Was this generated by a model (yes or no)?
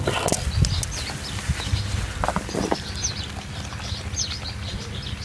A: no